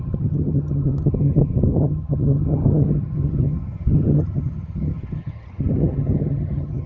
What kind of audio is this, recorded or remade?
remade